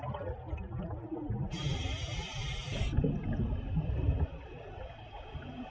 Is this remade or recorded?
recorded